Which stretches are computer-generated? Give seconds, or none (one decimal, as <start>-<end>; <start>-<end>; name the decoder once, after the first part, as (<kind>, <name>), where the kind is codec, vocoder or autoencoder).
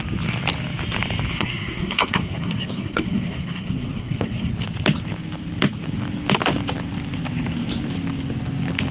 1.3-4.5 (codec, SNAC)